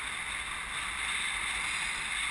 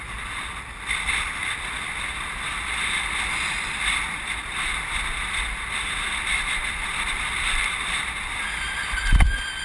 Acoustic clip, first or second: first